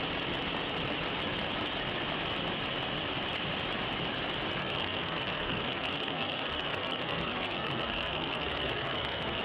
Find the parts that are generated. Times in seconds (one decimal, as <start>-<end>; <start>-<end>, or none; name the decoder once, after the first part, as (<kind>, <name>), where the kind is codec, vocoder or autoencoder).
4.6-9.4 (codec, SNAC)